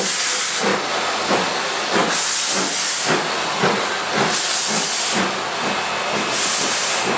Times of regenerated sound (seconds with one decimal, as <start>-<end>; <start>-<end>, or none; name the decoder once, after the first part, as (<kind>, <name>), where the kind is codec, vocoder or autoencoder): none